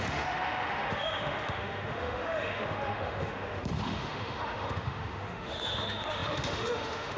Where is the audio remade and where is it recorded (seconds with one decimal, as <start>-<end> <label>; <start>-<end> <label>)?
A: 0.0-7.2 remade